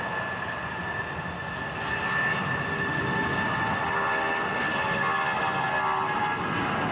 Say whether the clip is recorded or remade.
recorded